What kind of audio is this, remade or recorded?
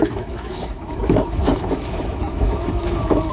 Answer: remade